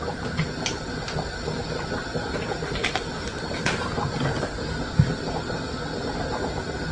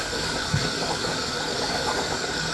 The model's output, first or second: second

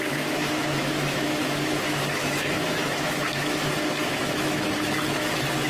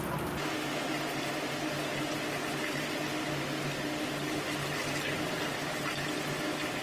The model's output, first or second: first